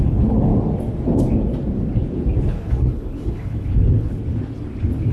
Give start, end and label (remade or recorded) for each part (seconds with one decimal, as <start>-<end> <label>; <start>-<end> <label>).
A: 0.0-0.5 remade; 0.5-2.4 recorded; 2.4-4.2 remade; 4.2-5.1 recorded